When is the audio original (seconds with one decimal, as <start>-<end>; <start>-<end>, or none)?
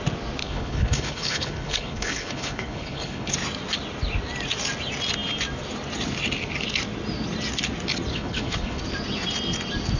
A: 0.0-0.4; 3.3-8.1; 8.8-10.0